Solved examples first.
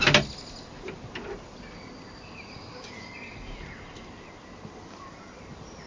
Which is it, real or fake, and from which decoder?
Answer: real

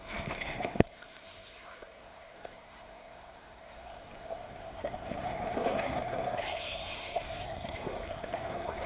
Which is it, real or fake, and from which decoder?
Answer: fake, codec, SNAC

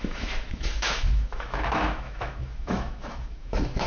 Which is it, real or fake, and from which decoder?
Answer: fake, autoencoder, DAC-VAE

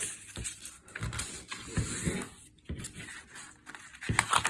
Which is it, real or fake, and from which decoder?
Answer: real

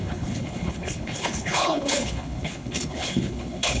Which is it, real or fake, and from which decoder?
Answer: fake, codec, HILCodec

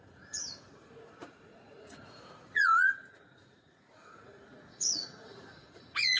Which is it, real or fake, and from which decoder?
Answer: fake, vocoder, Vocos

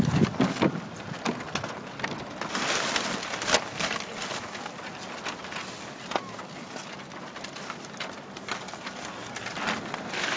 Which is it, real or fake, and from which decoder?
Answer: real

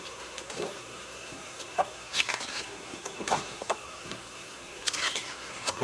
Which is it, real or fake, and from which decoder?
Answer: fake, codec, SNAC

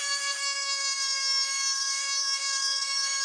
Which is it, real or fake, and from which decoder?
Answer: fake, autoencoder, DAC-VAE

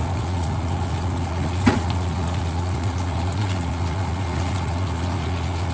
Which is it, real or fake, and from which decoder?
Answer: fake, vocoder, Vocos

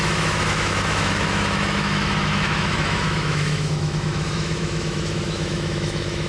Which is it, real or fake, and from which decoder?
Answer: fake, autoencoder, DAC-VAE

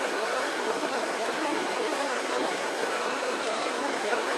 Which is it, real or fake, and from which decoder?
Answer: fake, codec, SNAC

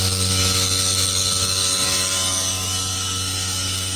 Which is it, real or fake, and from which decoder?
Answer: fake, codec, DAC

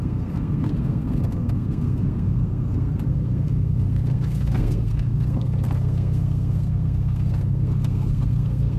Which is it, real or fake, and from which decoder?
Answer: fake, codec, SNAC